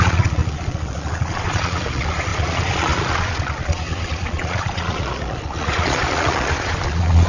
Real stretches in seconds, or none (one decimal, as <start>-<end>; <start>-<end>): none